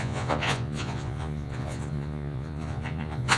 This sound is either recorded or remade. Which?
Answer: remade